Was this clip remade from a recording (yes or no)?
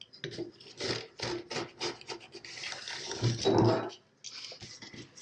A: no